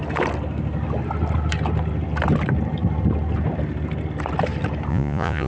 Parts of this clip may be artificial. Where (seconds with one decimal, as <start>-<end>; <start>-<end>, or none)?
4.9-5.5